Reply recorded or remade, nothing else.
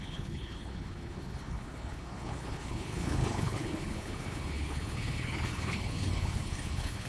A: remade